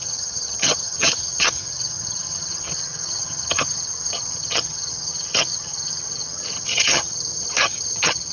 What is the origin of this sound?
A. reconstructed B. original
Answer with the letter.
A